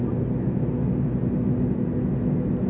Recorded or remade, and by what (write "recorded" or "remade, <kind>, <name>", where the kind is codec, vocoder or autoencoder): recorded